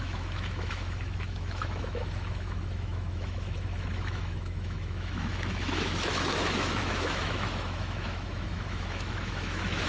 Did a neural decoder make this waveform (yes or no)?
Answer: yes